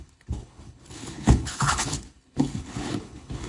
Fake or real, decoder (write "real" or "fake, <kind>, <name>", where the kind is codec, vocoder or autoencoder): fake, codec, HILCodec